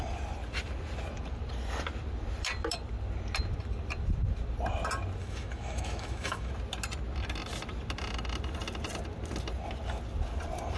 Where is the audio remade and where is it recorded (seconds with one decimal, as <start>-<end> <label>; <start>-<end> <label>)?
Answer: 0.0-5.2 recorded; 5.2-6.5 remade; 6.5-10.8 recorded